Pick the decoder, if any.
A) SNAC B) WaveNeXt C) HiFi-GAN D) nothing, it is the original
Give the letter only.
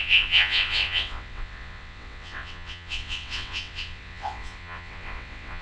B